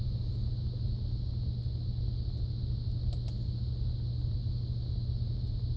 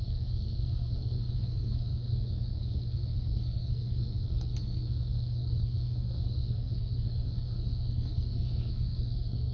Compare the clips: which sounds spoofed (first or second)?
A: second